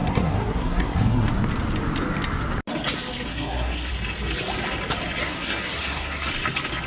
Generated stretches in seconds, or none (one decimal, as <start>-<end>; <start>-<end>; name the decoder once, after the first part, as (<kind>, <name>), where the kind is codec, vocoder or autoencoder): 0.0-1.3 (codec, SNAC); 3.3-3.9; 5.2-6.3